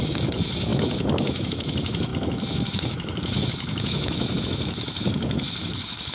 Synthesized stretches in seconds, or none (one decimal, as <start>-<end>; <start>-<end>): 0.0-6.1